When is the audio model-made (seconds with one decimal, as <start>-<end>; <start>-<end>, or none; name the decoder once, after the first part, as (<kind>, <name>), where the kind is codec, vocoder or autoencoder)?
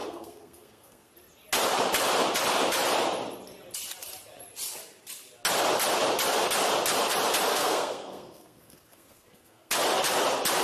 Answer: 0.0-1.1 (codec, SNAC); 7.5-9.7